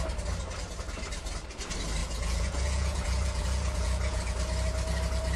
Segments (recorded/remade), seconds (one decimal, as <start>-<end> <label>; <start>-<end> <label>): 0.0-2.0 recorded; 2.0-4.2 remade; 4.2-5.4 recorded